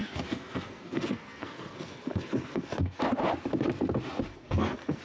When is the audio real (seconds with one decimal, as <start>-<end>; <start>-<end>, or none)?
3.0-4.3